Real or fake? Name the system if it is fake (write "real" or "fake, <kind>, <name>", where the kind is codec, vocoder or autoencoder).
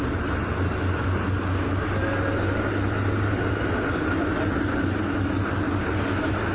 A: real